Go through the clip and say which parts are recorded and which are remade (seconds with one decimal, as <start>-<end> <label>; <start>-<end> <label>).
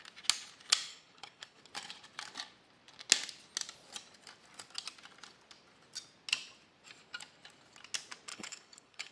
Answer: 0.0-0.9 recorded; 0.9-1.6 remade; 1.6-8.3 recorded; 8.3-9.1 remade